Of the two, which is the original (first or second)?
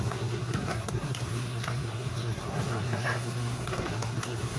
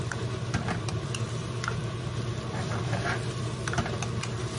second